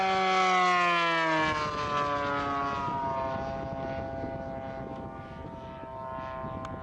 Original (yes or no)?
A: yes